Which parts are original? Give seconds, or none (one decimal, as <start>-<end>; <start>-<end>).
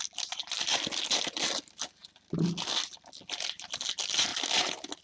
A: 0.0-5.0